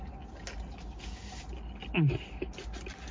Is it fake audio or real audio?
real